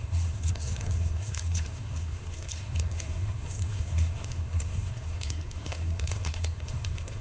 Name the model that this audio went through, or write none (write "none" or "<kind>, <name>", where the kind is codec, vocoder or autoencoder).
codec, SNAC